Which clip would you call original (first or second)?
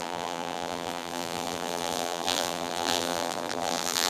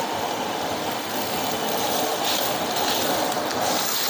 second